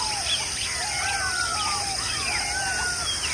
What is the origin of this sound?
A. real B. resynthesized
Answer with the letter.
A